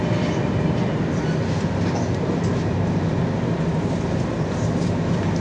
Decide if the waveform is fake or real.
real